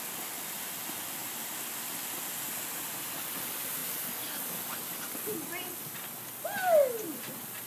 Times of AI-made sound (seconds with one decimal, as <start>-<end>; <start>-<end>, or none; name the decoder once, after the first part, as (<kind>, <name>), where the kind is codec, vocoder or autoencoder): none